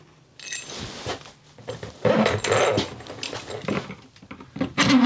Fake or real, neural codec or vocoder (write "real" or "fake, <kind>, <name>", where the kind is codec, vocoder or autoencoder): real